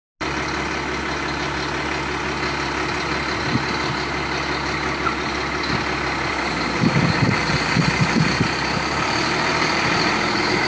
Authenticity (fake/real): real